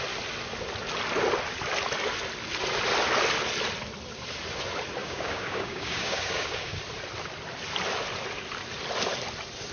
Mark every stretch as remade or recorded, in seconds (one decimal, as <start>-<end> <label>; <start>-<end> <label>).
0.0-5.0 recorded; 5.0-6.8 remade; 6.8-9.7 recorded